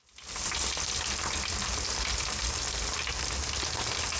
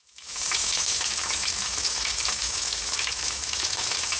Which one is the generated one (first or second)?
second